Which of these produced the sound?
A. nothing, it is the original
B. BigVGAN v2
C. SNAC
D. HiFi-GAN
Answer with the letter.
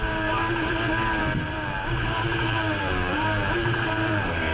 B